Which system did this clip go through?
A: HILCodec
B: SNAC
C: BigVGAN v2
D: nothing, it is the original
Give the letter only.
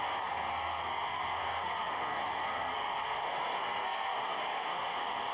B